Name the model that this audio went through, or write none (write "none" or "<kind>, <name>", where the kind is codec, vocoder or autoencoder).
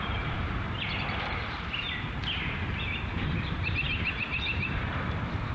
vocoder, BigVGAN v2